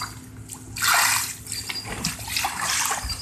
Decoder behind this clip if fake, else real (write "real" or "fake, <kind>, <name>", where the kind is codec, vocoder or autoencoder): real